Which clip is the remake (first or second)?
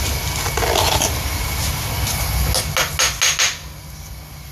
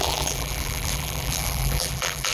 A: second